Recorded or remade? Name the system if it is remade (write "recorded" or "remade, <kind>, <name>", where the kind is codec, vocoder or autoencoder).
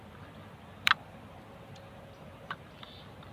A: recorded